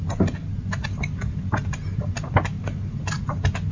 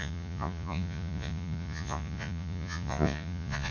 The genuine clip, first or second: first